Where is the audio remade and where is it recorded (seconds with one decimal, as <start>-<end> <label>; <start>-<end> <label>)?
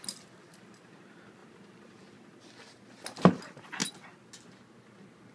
0.0-5.3 recorded